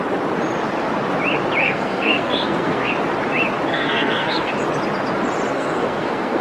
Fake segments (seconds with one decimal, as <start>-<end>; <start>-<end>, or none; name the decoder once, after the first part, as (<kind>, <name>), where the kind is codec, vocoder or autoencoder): 1.6-2.9 (codec, SNAC); 3.7-4.5; 5.5-6.4